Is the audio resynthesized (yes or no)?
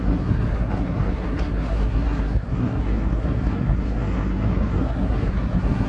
yes